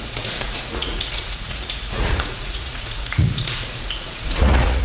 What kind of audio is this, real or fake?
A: fake